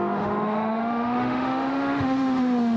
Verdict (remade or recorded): remade